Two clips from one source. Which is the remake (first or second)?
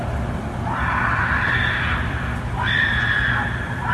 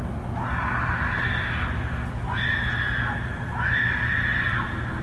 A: first